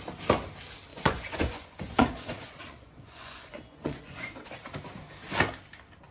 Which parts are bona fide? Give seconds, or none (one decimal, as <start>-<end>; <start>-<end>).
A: 0.0-0.9; 4.6-6.1